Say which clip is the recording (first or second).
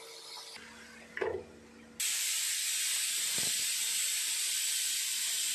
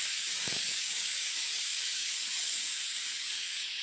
first